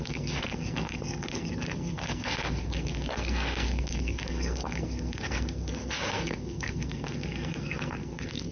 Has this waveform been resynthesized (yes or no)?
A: yes